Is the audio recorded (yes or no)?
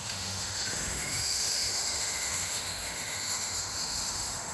no